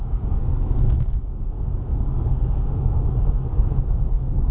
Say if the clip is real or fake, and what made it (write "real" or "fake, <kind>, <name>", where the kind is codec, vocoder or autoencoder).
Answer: fake, codec, SNAC